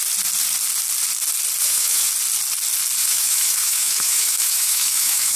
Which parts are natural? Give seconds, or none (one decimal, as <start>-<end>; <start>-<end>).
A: 0.0-1.6; 2.1-3.0